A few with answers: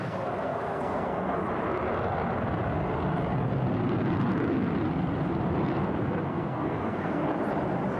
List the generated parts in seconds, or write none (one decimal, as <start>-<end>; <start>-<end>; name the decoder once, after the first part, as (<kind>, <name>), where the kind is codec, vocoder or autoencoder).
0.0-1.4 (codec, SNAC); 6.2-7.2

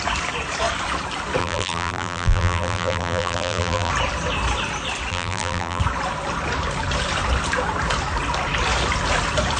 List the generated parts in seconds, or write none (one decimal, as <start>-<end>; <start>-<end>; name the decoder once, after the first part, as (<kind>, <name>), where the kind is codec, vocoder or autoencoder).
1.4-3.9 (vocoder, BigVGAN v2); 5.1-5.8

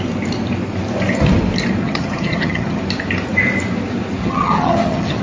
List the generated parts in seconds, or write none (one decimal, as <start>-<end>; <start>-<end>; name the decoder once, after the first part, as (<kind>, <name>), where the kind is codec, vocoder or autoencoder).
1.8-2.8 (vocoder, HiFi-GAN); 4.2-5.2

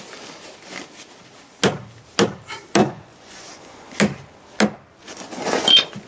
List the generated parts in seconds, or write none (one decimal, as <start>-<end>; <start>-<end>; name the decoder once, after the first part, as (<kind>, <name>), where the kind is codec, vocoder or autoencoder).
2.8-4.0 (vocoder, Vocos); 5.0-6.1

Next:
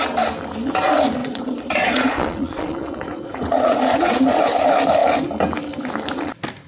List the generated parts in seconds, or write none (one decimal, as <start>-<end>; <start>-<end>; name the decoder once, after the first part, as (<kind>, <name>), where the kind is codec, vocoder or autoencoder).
1.2-4.4 (vocoder, Vocos)